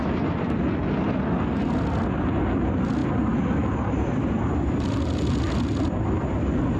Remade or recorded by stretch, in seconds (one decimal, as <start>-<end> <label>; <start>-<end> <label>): 0.0-6.8 recorded